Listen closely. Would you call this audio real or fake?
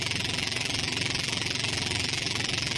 fake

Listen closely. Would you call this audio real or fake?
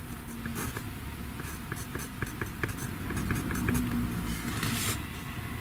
real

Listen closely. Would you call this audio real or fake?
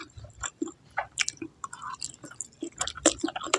fake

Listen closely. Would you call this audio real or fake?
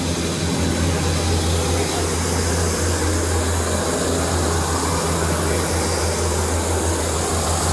real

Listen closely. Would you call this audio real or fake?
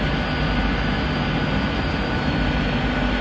real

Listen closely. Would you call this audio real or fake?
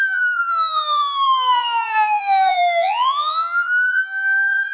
fake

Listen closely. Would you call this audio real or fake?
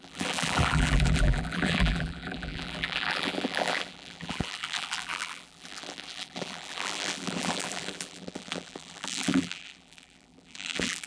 fake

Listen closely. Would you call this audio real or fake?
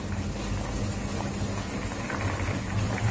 real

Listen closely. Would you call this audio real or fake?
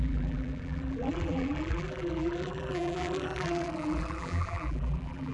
fake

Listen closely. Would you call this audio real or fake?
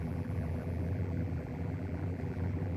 fake